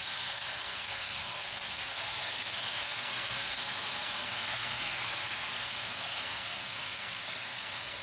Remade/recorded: remade